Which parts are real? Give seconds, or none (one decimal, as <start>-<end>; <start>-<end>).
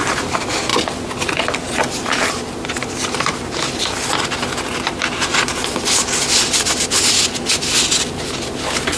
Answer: 0.0-9.0